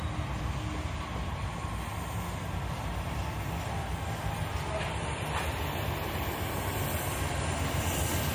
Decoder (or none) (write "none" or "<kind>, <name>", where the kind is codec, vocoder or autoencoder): none